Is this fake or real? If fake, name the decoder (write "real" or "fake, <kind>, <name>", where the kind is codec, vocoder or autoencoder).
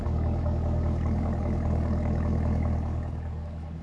fake, codec, DAC